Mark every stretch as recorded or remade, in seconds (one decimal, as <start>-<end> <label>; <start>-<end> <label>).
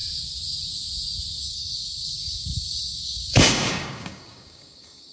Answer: 0.0-1.4 recorded; 1.4-5.1 remade